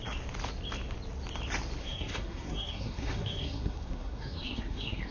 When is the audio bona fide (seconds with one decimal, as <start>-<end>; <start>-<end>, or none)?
0.0-1.8